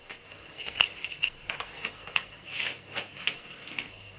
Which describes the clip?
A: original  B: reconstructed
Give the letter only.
B